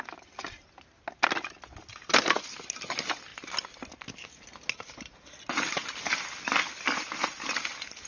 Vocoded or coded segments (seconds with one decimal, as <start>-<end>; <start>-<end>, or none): none